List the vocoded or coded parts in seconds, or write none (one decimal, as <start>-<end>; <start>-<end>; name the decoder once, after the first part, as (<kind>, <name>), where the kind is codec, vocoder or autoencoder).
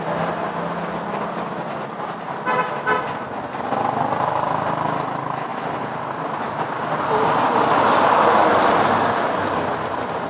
5.5-10.3 (vocoder, BigVGAN v2)